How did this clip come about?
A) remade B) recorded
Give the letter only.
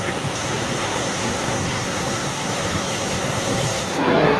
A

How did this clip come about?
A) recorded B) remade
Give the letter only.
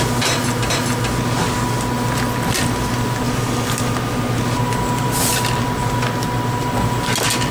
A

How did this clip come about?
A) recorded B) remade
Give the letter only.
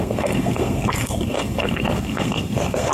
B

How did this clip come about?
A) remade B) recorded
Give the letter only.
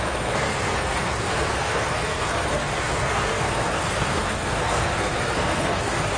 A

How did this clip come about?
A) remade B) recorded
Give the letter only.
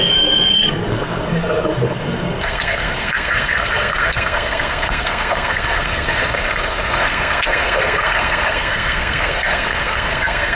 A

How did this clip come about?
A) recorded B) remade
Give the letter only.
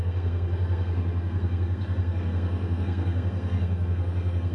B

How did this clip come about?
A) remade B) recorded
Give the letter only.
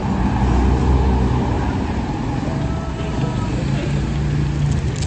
B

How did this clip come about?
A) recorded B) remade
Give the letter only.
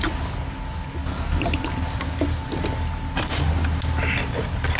A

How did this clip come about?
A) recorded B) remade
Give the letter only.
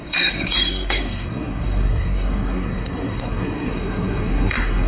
B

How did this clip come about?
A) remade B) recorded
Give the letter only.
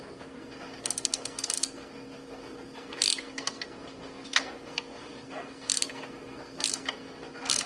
A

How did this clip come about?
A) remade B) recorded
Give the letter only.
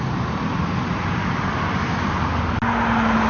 B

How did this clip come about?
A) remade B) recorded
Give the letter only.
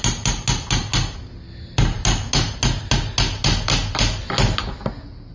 B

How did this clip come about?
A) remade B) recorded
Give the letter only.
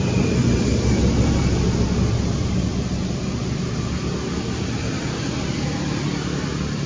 B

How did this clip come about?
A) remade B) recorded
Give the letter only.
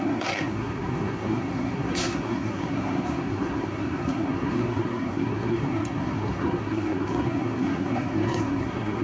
A